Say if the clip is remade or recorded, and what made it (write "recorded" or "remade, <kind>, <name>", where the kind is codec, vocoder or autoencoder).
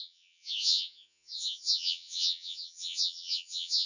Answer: remade, vocoder, Vocos